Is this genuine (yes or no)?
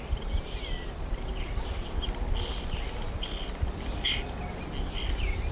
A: yes